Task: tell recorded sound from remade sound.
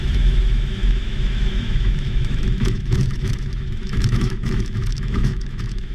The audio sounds remade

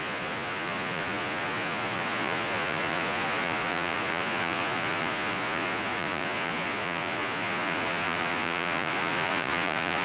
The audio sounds remade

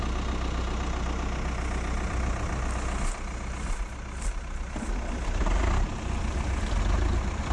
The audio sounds recorded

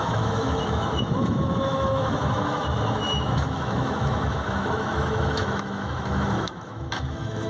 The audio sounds remade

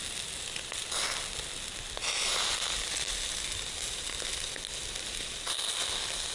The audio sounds recorded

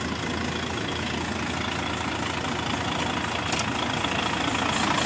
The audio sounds recorded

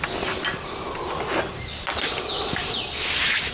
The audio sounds recorded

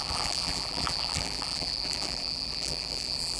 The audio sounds remade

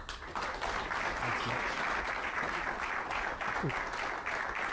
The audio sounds recorded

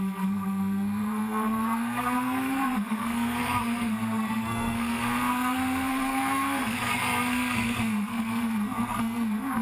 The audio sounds remade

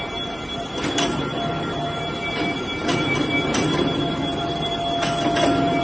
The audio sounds recorded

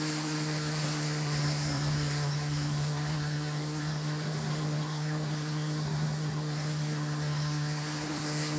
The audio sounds remade